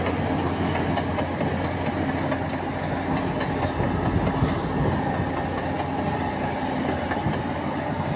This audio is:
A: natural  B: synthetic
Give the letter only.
A